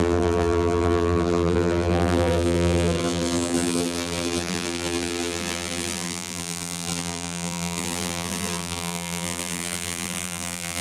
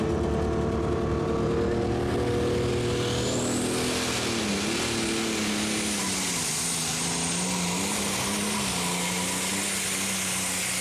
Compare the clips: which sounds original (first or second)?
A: second